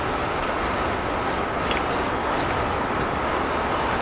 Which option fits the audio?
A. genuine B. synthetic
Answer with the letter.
A